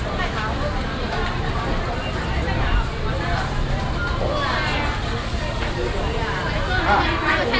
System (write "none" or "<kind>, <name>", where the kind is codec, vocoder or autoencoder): none